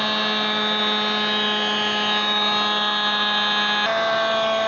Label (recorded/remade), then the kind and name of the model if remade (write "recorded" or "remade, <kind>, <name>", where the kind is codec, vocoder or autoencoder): recorded